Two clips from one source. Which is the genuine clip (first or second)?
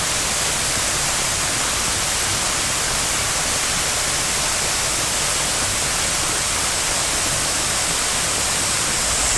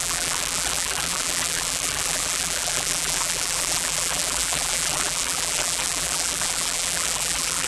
first